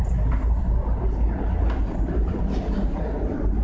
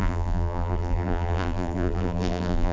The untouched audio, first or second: first